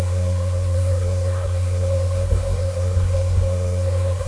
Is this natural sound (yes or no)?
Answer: no